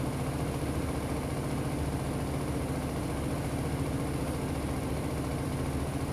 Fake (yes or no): no